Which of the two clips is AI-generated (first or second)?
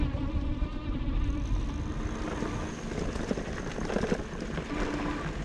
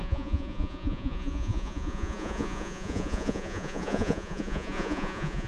second